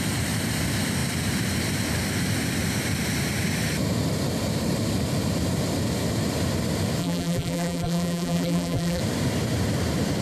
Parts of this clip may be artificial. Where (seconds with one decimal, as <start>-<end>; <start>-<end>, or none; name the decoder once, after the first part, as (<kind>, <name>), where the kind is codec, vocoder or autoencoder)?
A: 7.0-9.0 (vocoder, BigVGAN v2)